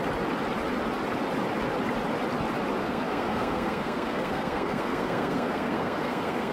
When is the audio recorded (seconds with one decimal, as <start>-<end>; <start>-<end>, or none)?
0.0-2.8